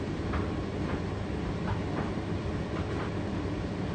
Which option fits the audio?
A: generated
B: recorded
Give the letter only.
A